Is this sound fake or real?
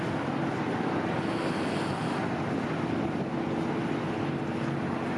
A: real